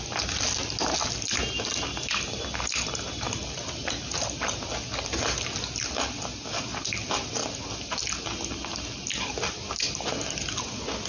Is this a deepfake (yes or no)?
no